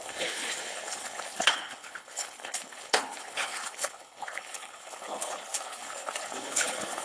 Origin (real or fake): fake